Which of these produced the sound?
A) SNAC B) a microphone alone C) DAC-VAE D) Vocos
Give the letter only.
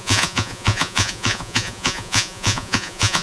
D